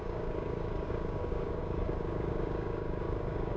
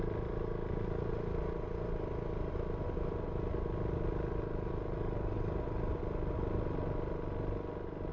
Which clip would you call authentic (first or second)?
second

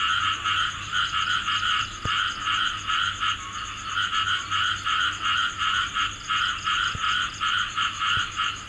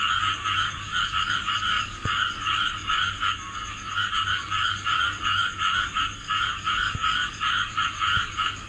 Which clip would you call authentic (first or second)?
first